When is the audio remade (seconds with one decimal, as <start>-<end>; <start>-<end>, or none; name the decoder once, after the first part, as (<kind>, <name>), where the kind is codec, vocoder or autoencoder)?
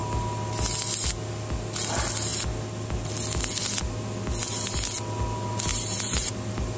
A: 5.7-6.3 (vocoder, BigVGAN v2)